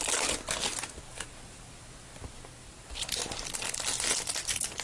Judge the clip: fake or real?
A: real